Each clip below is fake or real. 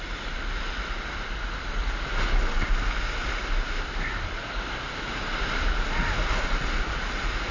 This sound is real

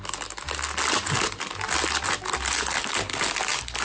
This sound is real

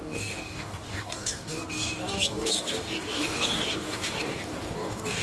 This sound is fake